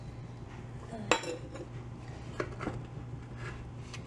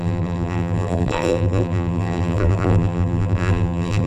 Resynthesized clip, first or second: second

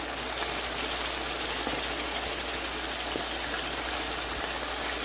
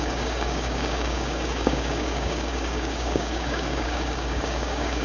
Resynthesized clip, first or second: second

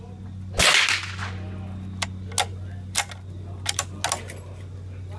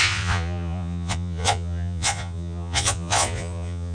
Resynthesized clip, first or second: second